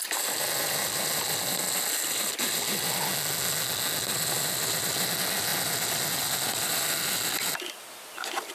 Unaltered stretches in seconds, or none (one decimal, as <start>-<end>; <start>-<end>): 3.1-4.1